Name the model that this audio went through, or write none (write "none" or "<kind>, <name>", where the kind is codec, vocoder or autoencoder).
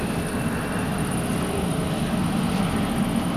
none